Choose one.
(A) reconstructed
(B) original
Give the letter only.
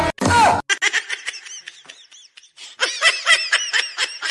B